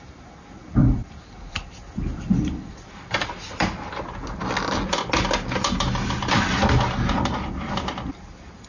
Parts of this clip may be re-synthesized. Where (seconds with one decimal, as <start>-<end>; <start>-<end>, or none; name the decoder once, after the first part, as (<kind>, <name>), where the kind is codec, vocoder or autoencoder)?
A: 0.8-4.5 (vocoder, BigVGAN v2)